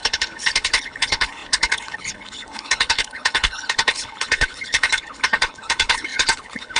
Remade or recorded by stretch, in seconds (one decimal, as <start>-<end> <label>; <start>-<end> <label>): 0.0-6.8 remade